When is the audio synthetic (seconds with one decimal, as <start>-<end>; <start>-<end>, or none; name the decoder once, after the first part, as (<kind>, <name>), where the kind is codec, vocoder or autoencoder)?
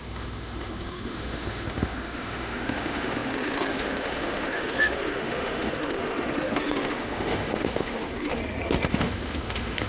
0.0-8.4 (autoencoder, DAC-VAE); 8.9-9.9